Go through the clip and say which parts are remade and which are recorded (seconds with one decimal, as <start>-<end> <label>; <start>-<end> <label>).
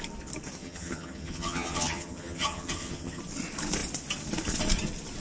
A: 0.0-0.6 recorded; 0.6-3.2 remade; 3.2-5.2 recorded